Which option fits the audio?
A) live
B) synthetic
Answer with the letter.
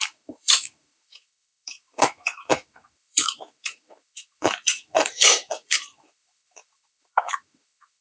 B